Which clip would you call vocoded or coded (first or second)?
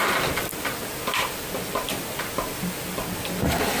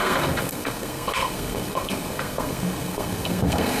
second